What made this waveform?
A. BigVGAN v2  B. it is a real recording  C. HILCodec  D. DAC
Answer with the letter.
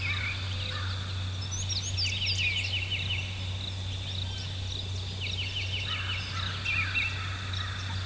B